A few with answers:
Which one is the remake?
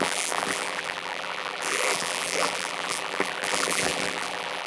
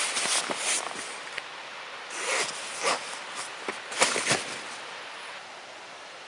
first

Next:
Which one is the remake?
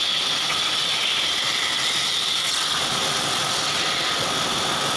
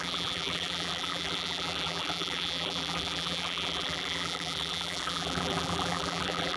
second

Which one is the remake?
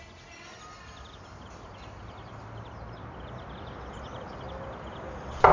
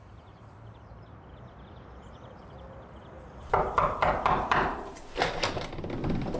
second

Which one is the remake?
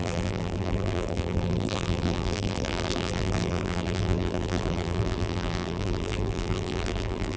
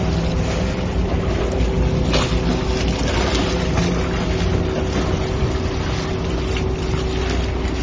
first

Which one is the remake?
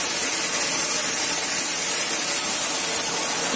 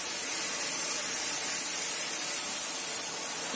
second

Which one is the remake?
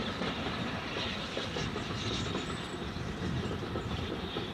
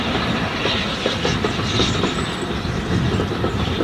first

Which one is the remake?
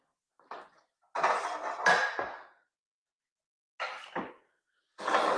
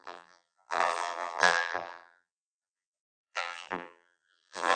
second